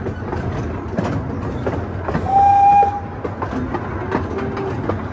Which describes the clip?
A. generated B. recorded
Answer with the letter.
B